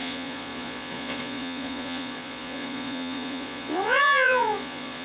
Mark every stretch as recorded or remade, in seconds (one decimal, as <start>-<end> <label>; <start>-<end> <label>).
0.0-5.0 remade